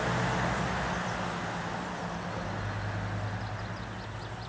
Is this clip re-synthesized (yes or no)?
no